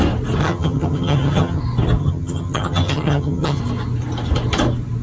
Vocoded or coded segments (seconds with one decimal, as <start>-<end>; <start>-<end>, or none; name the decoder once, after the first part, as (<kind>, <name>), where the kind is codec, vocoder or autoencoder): 0.4-1.6 (vocoder, HiFi-GAN); 2.0-3.6